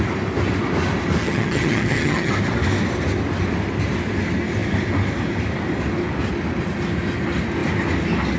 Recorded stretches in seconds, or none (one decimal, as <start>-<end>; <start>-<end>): 0.0-1.2; 2.3-8.4